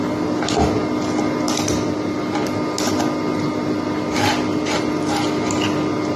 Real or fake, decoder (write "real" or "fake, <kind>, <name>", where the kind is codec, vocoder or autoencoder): real